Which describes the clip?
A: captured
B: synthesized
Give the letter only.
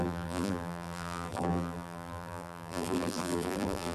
B